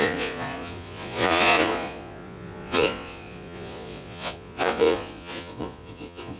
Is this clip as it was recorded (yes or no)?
no